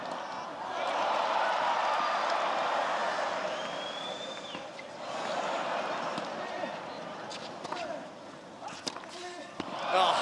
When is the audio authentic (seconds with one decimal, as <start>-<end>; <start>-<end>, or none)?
0.0-10.2